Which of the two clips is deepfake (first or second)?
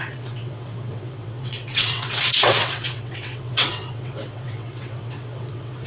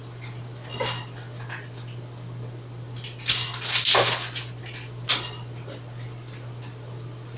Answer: first